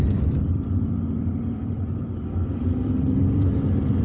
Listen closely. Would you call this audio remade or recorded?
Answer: remade